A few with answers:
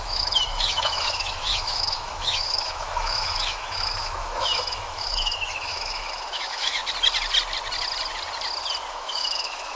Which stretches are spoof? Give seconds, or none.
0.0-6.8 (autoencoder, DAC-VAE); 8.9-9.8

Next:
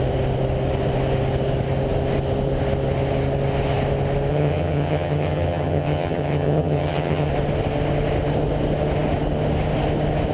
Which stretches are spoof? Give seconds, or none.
4.3-7.3 (vocoder, HiFi-GAN)

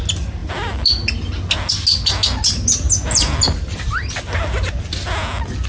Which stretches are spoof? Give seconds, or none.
none

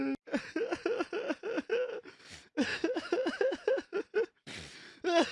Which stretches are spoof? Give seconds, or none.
2.7-4.0 (autoencoder, DAC-VAE)

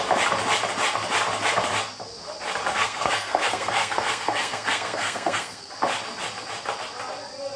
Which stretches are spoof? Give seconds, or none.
2.7-5.7 (codec, SNAC)

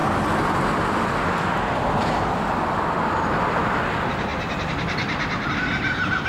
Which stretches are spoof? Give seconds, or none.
none

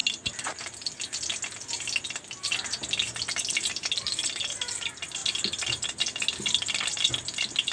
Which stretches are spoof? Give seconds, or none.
none

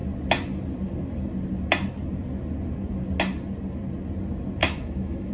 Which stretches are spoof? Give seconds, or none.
4.6-5.3 (autoencoder, DAC-VAE)